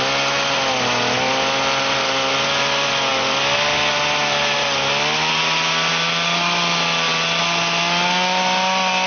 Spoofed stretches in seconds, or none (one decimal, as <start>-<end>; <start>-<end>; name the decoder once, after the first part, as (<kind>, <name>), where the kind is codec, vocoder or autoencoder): none